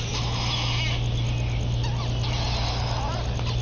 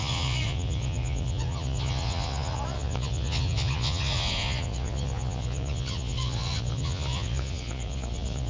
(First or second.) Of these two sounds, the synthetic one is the second